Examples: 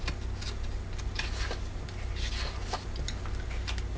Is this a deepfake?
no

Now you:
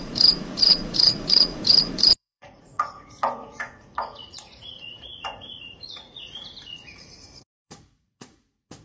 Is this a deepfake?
yes